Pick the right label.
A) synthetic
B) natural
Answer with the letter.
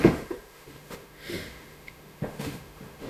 A